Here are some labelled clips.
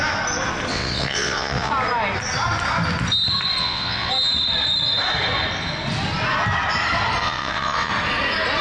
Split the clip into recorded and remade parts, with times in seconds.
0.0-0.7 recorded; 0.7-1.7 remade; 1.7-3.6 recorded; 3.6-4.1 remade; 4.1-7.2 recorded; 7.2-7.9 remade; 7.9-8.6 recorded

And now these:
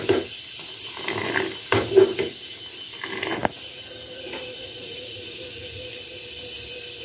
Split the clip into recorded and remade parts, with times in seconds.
0.0-7.0 recorded

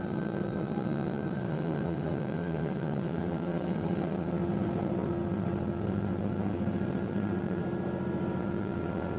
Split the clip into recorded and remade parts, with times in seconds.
0.0-7.6 remade; 7.6-8.4 recorded; 8.4-9.2 remade

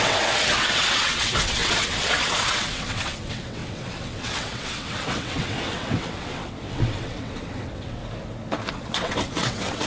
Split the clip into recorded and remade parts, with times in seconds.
0.0-8.0 remade; 8.0-8.7 recorded; 8.7-9.9 remade